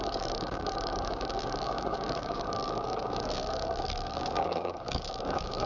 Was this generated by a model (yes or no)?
yes